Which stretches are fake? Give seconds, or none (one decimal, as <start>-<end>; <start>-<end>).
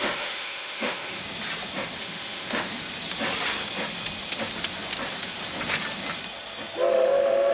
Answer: 0.0-1.2; 2.0-2.7; 6.9-7.5